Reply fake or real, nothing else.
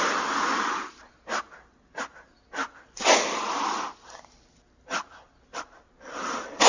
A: real